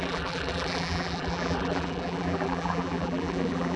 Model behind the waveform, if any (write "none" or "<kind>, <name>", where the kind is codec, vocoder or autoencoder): vocoder, BigVGAN v2